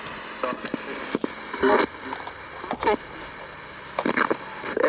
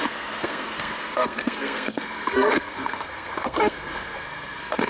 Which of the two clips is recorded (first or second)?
first